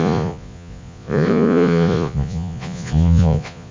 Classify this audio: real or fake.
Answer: fake